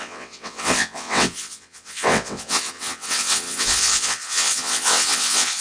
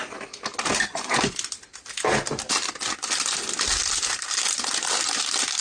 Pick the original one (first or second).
second